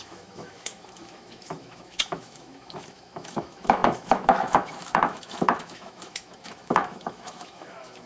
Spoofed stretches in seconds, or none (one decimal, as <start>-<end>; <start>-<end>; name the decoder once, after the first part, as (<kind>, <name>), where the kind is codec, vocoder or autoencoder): 0.0-8.1 (autoencoder, DAC-VAE)